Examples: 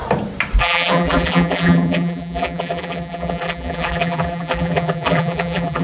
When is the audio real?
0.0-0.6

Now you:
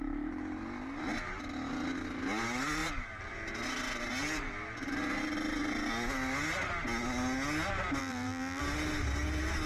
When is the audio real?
0.0-8.0; 8.6-9.7

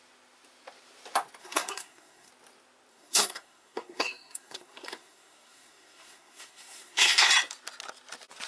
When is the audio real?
0.0-1.4; 2.3-2.9; 7.3-8.5

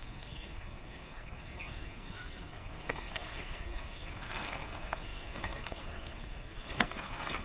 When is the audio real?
none

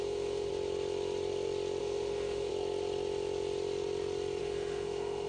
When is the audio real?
0.5-1.8; 2.5-4.4

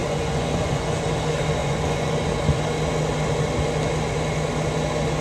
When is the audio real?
1.1-1.6; 2.3-5.2